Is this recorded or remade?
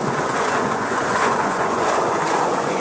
remade